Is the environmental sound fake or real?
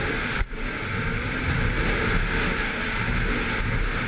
real